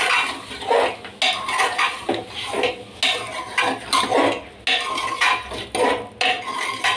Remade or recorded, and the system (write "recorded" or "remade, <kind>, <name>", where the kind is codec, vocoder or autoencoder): recorded